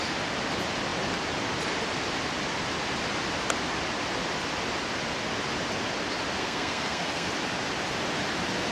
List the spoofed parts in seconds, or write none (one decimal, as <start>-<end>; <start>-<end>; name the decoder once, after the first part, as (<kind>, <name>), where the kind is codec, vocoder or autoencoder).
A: 6.4-7.3 (codec, SNAC)